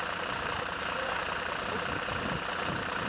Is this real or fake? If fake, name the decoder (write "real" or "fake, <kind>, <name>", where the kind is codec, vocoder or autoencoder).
real